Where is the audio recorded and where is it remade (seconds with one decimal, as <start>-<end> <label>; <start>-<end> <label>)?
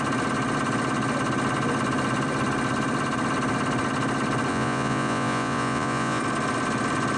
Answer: 0.0-4.5 recorded; 4.5-6.2 remade; 6.2-7.2 recorded